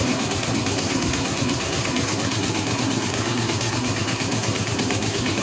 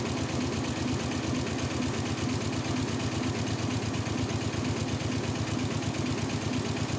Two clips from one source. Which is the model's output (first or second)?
first